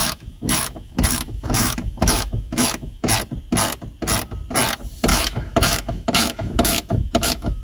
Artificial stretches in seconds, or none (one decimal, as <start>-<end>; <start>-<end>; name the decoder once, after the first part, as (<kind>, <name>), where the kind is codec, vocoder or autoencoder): 0.0-3.1 (autoencoder, DAC-VAE); 5.1-7.6